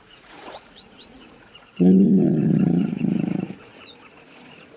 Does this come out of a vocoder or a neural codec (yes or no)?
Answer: yes